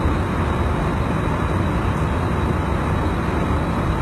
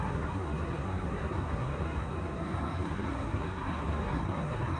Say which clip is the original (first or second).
first